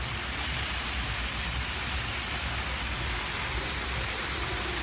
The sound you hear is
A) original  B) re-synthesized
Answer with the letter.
A